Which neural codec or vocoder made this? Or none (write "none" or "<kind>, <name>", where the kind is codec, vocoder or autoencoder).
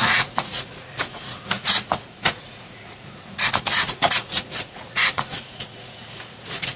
vocoder, Vocos